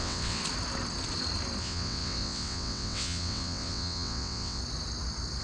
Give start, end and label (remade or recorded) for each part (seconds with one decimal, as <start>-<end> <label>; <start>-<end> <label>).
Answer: 0.0-0.4 remade; 0.4-1.6 recorded; 1.6-4.6 remade; 4.6-5.4 recorded